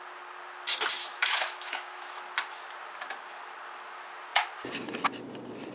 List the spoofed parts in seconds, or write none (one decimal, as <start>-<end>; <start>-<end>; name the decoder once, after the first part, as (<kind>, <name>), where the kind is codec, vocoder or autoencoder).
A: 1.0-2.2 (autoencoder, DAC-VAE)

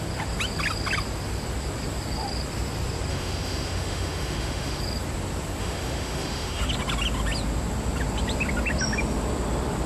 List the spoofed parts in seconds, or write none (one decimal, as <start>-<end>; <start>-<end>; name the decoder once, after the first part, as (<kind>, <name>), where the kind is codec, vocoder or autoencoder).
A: 3.1-4.8 (autoencoder, DAC-VAE); 5.6-6.7

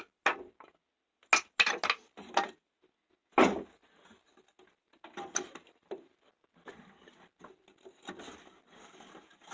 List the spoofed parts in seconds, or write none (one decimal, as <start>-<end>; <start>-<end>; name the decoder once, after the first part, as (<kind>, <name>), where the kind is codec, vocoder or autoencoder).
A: none